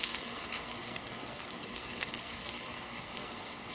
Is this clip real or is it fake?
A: fake